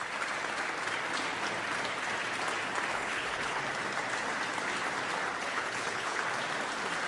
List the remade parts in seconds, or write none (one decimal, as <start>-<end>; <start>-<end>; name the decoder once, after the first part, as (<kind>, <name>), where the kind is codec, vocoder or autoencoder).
2.9-3.6 (codec, HILCodec); 5.5-6.2